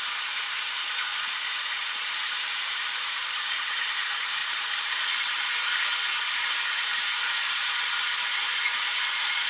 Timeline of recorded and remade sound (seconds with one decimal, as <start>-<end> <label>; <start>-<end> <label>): 0.0-9.5 remade